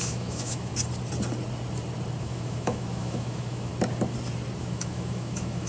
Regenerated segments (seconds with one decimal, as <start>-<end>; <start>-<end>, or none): 0.0-0.7; 2.2-3.7; 4.6-5.7

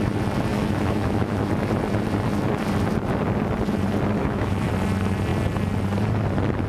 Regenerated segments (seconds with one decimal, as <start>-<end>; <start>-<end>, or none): 0.5-1.5; 4.2-4.7